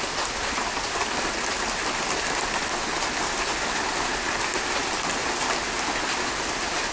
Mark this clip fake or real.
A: real